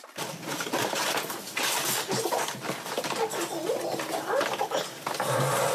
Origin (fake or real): fake